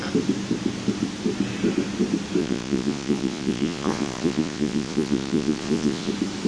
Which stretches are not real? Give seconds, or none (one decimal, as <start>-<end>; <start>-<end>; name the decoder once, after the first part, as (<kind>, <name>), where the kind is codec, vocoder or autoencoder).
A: 2.4-6.1 (vocoder, Vocos)

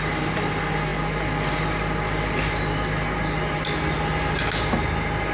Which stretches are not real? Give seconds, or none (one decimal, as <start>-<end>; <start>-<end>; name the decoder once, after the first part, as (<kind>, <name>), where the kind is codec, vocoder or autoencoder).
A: none